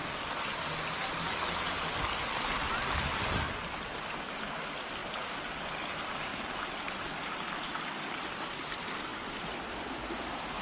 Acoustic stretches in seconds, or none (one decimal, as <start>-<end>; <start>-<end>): 0.6-9.1; 9.8-10.6